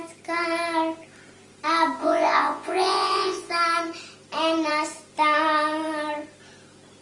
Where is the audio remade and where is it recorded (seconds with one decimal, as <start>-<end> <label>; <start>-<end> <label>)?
0.0-2.0 recorded; 2.0-3.5 remade; 3.5-7.0 recorded